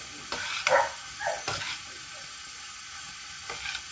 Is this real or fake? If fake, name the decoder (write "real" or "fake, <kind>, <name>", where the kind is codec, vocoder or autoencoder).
real